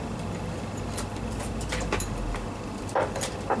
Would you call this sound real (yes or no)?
yes